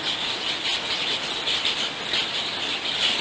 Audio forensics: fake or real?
real